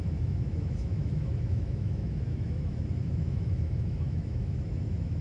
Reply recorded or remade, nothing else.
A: remade